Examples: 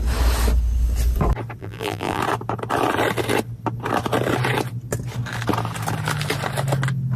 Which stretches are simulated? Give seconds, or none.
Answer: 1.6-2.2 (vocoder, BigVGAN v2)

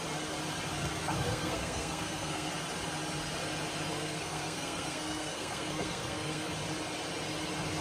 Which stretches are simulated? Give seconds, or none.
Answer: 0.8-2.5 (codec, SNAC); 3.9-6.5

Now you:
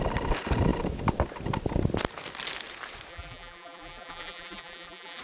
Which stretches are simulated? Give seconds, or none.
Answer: 3.1-5.2 (vocoder, BigVGAN v2)